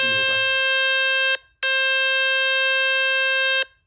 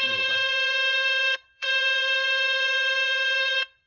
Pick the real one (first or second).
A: first